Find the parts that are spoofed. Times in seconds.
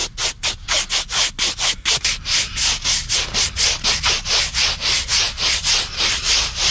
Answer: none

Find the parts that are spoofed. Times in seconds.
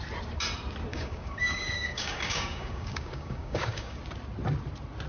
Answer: 0.9-4.0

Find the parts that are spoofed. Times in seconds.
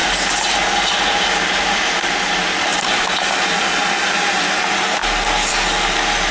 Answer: none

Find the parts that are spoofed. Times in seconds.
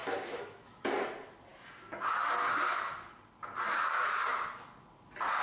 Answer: 0.0-0.9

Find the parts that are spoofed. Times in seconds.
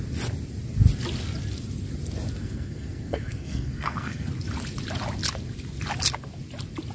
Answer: 2.4-4.3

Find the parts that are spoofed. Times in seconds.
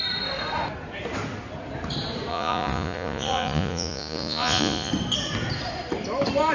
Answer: 2.3-4.9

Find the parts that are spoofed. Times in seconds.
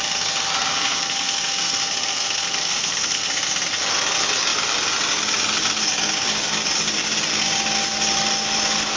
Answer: 0.7-3.3